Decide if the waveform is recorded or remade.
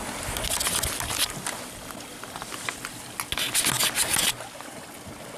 recorded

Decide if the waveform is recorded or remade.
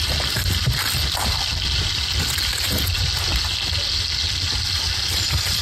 recorded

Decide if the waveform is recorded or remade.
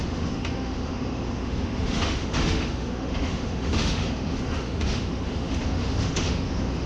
remade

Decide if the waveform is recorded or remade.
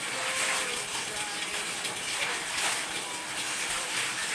recorded